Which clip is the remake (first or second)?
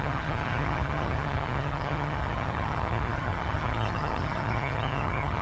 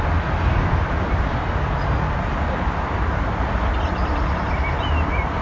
first